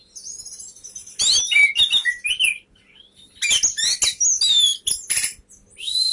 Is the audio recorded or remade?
recorded